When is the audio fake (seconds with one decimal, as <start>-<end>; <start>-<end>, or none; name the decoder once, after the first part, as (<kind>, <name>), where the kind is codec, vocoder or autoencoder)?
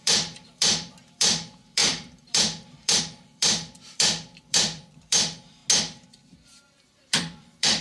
0.0-5.6 (vocoder, BigVGAN v2); 6.1-7.8